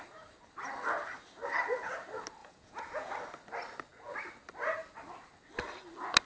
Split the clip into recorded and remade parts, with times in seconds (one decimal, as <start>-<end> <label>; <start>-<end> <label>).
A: 0.0-2.4 recorded; 2.4-3.1 remade; 3.1-6.3 recorded